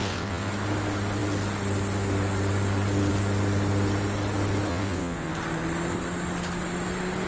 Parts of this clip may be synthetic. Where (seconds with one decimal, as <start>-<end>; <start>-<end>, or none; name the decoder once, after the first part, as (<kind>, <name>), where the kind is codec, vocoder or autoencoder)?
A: 0.0-0.5 (vocoder, WaveNeXt); 4.7-5.3